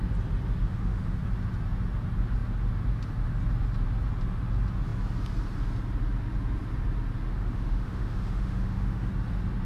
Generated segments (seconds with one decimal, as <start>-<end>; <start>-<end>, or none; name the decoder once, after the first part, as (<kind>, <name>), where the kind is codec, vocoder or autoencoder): 0.6-1.2 (autoencoder, DAC-VAE); 7.3-9.1